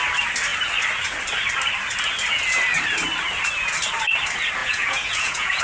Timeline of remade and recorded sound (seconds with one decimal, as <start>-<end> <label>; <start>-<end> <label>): 0.0-4.6 recorded; 4.6-5.6 remade

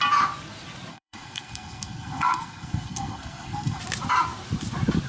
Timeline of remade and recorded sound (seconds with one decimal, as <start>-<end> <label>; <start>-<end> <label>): 0.0-0.9 recorded; 0.9-3.8 remade; 3.8-5.1 recorded

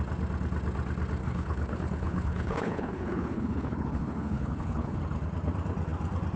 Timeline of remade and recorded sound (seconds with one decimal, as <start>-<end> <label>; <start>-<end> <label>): 0.0-1.2 recorded; 1.2-5.0 remade; 5.0-6.4 recorded

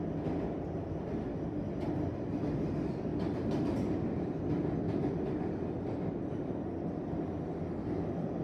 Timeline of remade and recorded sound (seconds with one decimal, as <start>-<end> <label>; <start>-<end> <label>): 0.0-8.4 recorded